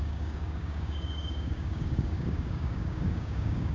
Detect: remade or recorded remade